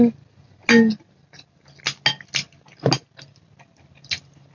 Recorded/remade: recorded